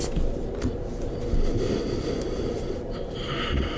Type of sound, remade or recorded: recorded